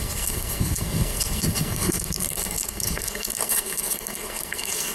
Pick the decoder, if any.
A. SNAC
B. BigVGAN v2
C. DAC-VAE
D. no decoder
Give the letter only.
A